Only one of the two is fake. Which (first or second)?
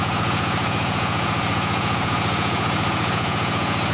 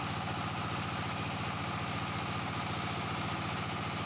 first